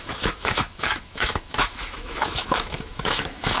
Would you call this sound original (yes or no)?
no